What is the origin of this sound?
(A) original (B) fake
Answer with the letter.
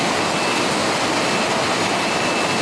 A